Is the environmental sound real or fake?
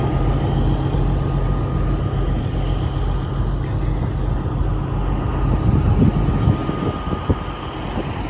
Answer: real